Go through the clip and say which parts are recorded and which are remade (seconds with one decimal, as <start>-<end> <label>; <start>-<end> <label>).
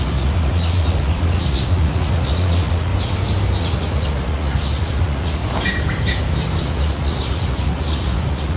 0.0-2.9 remade; 2.9-3.6 recorded; 3.6-5.4 remade; 5.4-6.6 recorded; 6.6-8.6 remade